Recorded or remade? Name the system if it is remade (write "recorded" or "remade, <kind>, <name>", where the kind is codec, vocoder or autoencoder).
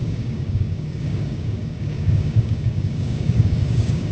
remade, codec, DAC